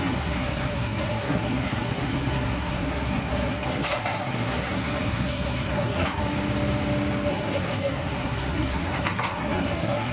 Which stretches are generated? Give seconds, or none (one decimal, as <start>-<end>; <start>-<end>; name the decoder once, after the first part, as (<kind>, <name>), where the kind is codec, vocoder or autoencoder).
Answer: 0.0-6.2 (codec, SNAC); 7.3-10.1